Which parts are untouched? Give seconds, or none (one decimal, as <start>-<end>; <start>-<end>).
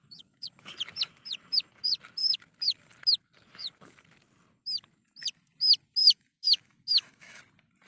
0.7-6.0; 7.4-7.9